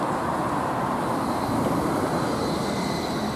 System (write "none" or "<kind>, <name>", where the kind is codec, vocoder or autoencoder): vocoder, BigVGAN v2